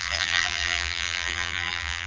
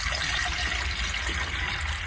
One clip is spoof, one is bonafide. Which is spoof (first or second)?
first